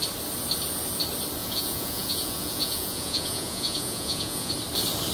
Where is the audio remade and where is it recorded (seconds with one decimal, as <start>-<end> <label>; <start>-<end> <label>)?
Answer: 0.0-1.4 recorded; 1.4-4.5 remade; 4.5-5.1 recorded